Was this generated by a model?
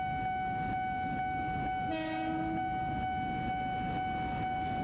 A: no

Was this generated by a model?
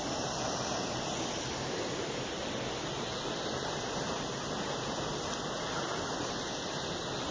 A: no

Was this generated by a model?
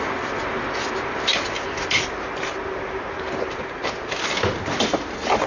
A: no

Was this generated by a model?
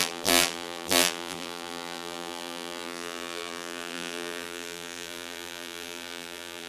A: yes